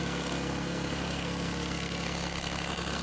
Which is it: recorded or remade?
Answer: remade